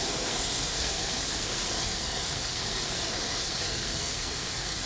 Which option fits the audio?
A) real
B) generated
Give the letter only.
B